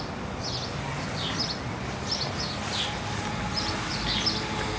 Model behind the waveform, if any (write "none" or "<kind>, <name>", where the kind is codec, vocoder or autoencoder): none